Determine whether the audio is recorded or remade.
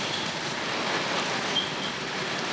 recorded